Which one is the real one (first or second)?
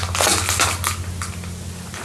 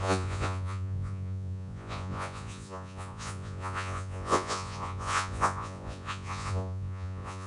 first